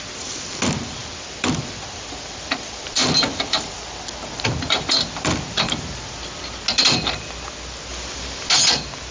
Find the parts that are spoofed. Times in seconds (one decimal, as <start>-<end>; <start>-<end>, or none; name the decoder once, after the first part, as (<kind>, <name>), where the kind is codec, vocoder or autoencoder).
1.0-3.7 (vocoder, BigVGAN v2); 7.9-8.5